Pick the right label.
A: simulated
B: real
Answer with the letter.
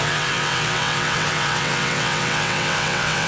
A